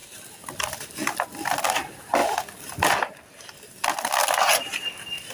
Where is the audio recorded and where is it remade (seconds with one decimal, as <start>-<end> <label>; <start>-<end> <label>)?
0.0-5.3 recorded